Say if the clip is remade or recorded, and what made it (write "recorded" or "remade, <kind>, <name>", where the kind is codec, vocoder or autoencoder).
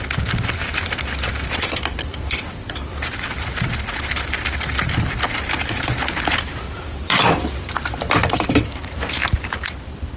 remade, vocoder, BigVGAN v2